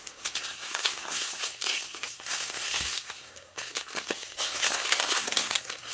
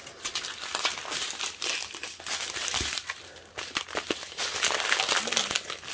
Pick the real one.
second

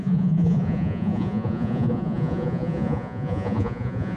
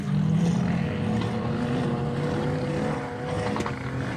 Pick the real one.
second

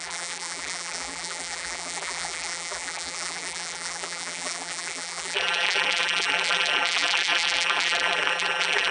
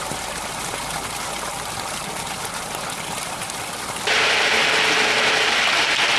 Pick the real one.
second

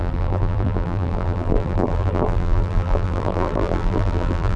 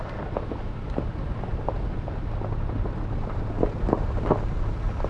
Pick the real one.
second